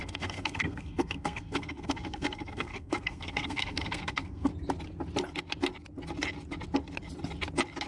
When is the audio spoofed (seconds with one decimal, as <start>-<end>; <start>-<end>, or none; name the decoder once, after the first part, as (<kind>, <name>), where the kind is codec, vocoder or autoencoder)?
0.0-4.5 (codec, SNAC)